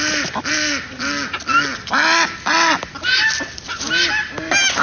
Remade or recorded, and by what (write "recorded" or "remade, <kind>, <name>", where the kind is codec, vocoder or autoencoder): recorded